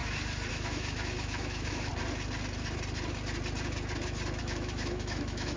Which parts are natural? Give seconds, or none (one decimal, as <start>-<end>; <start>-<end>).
0.0-0.5; 1.9-4.4